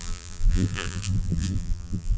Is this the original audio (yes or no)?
no